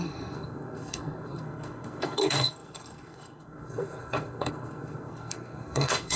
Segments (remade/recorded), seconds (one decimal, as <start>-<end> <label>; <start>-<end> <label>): 0.0-6.2 remade